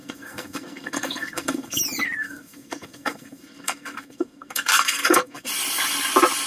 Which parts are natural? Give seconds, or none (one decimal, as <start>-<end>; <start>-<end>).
1.8-2.2; 5.5-6.5